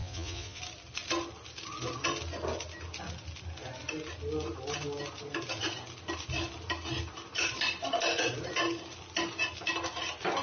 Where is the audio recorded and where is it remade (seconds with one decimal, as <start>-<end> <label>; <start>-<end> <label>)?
0.0-0.6 remade; 0.6-10.4 recorded